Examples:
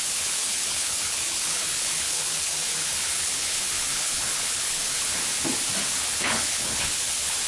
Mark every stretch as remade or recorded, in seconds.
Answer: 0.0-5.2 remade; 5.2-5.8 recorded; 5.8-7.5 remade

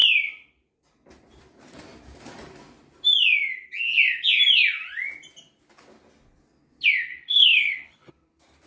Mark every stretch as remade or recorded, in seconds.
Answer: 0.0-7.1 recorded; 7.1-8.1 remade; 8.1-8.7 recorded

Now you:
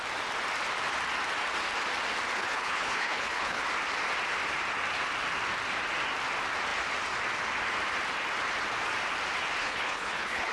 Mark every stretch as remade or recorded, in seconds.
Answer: 0.0-2.4 recorded; 2.4-3.6 remade; 3.6-9.6 recorded; 9.6-10.5 remade

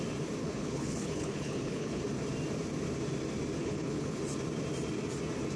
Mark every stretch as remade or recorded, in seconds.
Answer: 0.0-0.4 recorded; 0.4-2.0 remade; 2.0-3.6 recorded; 3.6-4.2 remade; 4.2-5.6 recorded

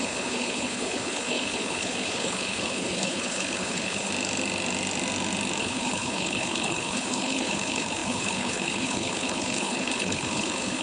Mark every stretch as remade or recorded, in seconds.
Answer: 0.0-4.1 remade; 4.1-5.6 recorded; 5.6-10.8 remade

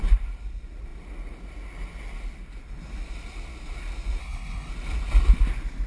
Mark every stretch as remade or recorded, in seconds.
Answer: 0.0-4.2 recorded; 4.2-4.7 remade; 4.7-5.9 recorded

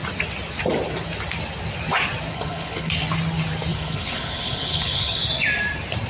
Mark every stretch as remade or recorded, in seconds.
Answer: 0.0-2.3 recorded; 2.3-2.9 remade; 2.9-3.7 recorded; 3.7-5.2 remade; 5.2-6.1 recorded

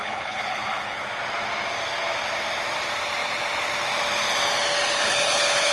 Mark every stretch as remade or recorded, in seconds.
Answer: 0.0-1.0 remade; 1.0-5.0 recorded; 5.0-5.7 remade